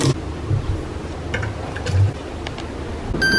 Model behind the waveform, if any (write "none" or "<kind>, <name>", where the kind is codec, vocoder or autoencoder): none